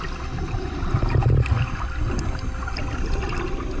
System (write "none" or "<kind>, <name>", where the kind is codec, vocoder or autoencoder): none